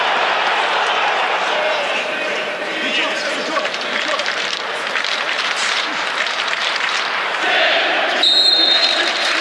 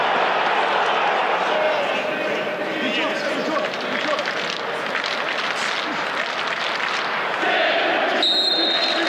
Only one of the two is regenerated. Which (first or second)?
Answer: first